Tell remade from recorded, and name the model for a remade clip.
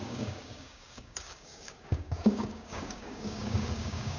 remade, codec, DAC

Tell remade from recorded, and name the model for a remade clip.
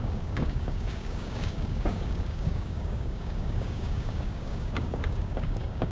remade, codec, DAC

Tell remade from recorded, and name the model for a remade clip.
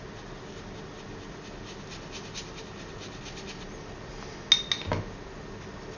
recorded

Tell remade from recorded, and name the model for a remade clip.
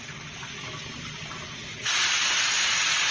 recorded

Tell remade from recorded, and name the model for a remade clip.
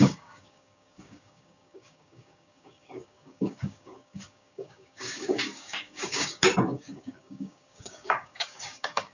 remade, codec, DAC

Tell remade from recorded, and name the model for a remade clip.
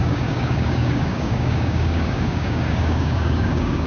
remade, codec, DAC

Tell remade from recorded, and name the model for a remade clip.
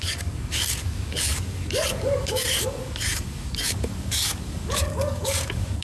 remade, codec, DAC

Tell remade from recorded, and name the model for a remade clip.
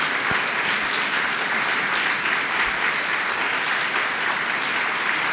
recorded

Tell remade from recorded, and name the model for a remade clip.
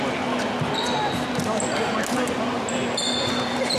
recorded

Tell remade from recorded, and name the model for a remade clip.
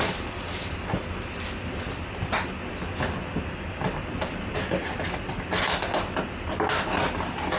recorded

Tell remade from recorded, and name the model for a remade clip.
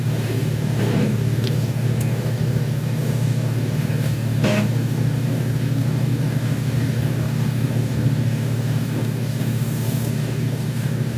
remade, codec, DAC